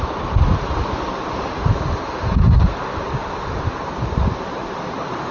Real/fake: real